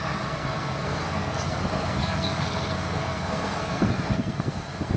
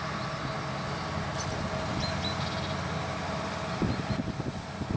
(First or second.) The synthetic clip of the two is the first